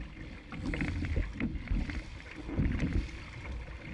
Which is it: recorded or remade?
recorded